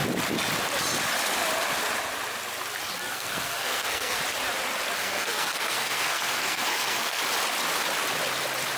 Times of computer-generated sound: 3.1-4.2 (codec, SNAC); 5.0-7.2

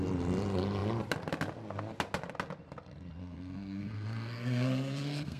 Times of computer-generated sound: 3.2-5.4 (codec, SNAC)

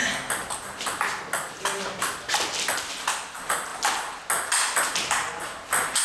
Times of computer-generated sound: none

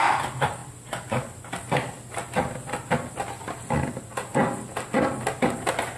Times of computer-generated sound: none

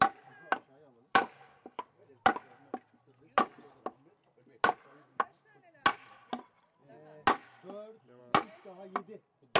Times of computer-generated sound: none

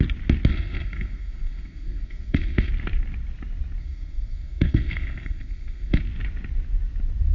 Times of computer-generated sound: 0.5-2.7 (codec, SNAC); 3.8-6.0